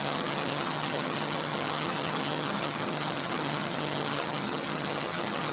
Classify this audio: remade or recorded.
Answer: remade